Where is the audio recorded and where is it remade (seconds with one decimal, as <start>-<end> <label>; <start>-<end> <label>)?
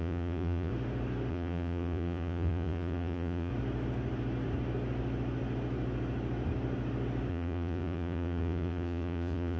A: 0.0-0.7 remade; 0.7-1.3 recorded; 1.3-3.5 remade; 3.5-7.3 recorded; 7.3-9.6 remade